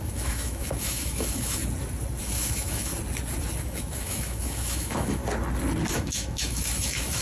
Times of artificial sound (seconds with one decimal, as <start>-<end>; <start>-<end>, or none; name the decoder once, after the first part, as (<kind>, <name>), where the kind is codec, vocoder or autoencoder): 0.0-1.6 (autoencoder, DAC-VAE); 2.2-2.9; 3.6-5.2; 5.9-7.2